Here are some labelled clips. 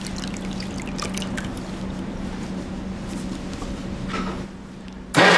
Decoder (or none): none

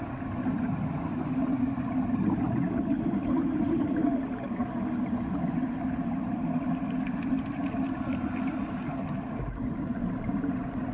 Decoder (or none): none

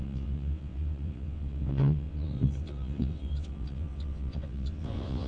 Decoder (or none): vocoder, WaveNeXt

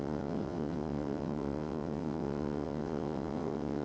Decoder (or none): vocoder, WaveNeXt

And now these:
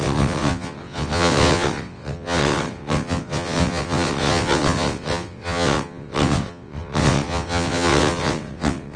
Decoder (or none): vocoder, WaveNeXt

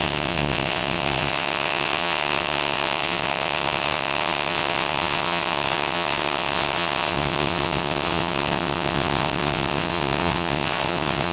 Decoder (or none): vocoder, WaveNeXt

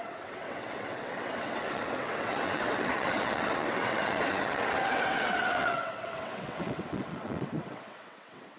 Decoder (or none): vocoder, WaveNeXt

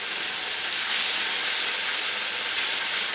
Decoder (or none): none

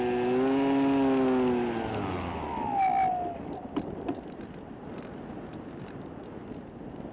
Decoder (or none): none